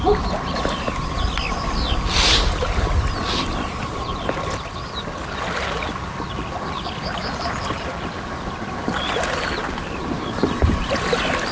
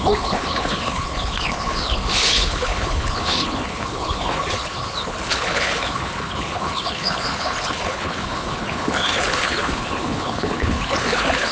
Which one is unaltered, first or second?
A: first